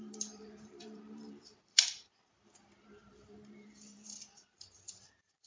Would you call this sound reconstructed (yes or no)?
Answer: yes